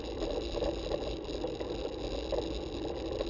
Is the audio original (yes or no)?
yes